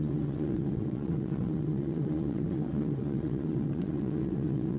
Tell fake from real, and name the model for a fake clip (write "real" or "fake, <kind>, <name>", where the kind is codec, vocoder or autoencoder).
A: fake, vocoder, WaveNeXt